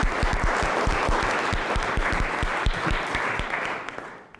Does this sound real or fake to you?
real